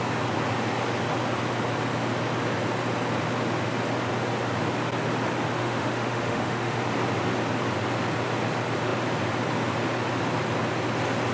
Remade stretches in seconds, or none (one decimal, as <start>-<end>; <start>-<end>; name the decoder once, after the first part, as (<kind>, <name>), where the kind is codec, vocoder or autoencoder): 5.6-6.8 (autoencoder, DAC-VAE)